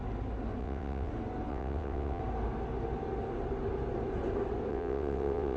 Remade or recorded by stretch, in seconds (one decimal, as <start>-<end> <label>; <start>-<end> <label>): 0.0-0.6 recorded; 0.6-1.1 remade; 1.1-1.5 recorded; 1.5-2.2 remade; 2.2-4.7 recorded; 4.7-5.6 remade